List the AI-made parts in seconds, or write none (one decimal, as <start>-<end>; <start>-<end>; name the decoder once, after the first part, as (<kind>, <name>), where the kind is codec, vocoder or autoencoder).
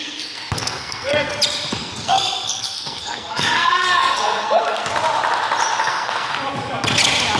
0.0-1.3 (codec, SNAC); 1.8-4.9; 5.8-6.3